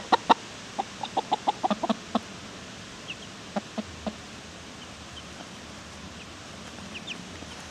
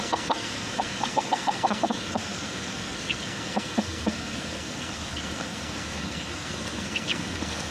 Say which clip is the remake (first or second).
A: second